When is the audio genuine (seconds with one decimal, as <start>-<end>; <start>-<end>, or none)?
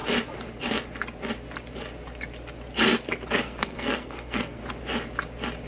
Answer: 0.0-3.4; 4.6-5.7